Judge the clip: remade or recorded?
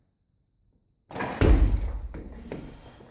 recorded